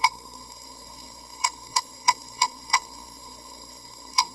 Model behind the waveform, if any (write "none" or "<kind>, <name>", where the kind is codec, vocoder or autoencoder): codec, SNAC